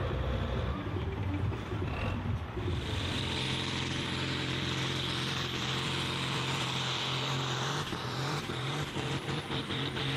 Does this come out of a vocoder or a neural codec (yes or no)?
yes